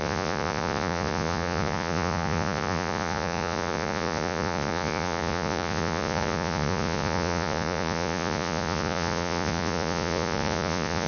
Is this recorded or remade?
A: remade